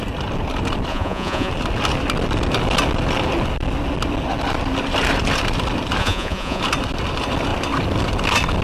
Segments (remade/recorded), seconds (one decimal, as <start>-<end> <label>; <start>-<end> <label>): 0.0-0.9 recorded; 0.9-1.5 remade; 1.5-6.0 recorded; 6.0-6.6 remade; 6.6-8.6 recorded